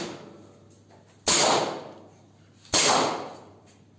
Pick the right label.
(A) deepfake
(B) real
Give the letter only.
B